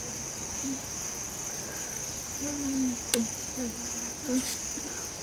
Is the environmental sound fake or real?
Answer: real